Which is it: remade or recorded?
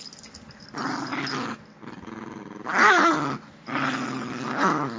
recorded